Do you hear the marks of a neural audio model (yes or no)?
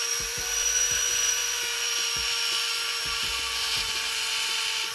yes